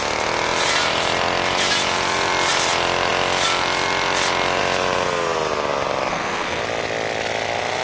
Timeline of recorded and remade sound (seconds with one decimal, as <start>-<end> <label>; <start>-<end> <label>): 0.0-6.1 recorded; 6.1-6.6 remade; 6.6-7.8 recorded